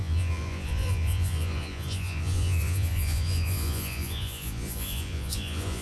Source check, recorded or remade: remade